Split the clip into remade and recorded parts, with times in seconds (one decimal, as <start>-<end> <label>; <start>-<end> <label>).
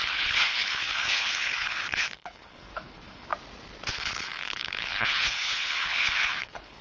0.0-3.3 remade; 3.3-3.9 recorded; 3.9-6.8 remade